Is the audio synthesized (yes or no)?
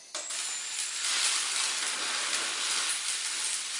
no